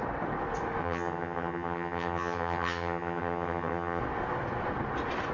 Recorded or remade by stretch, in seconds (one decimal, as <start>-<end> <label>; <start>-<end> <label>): 0.0-0.8 recorded; 0.8-4.0 remade; 4.0-5.3 recorded